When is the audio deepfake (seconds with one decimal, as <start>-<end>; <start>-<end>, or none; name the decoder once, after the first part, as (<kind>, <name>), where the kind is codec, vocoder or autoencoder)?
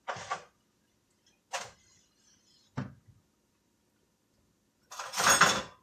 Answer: none